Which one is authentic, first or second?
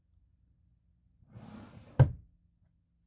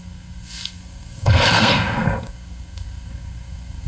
first